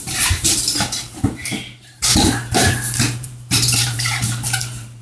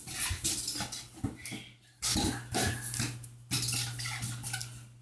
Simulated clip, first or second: first